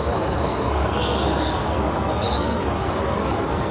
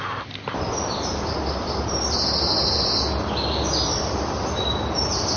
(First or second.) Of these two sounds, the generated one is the first